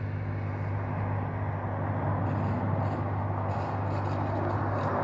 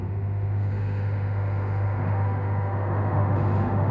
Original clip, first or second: first